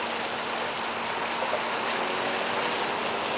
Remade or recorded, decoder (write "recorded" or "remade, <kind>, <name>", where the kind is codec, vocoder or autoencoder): recorded